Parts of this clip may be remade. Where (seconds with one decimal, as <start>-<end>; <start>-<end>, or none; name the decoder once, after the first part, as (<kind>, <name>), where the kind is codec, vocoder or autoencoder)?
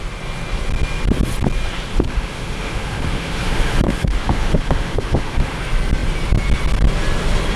1.9-5.6 (autoencoder, DAC-VAE)